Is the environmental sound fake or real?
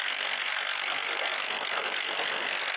fake